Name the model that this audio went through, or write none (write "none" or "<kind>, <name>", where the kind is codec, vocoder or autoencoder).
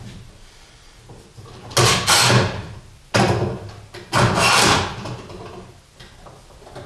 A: none